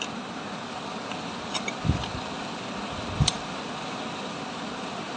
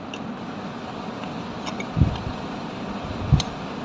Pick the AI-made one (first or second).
first